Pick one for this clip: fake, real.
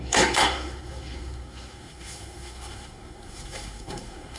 fake